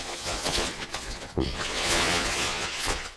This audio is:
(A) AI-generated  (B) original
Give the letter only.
A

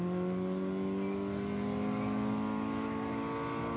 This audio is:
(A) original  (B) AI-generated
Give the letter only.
A